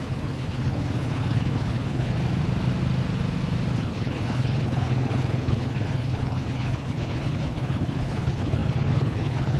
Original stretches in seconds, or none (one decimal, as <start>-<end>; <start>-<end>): 2.2-3.7